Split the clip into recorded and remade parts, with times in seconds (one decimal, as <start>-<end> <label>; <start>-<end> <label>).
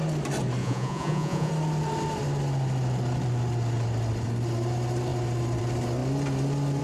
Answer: 0.0-0.6 recorded; 0.6-1.5 remade; 1.5-6.8 recorded